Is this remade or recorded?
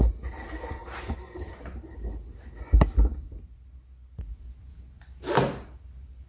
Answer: recorded